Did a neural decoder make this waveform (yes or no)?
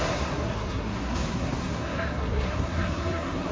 yes